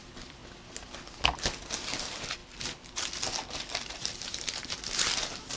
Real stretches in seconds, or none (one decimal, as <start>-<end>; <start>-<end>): 0.4-1.9; 2.4-3.8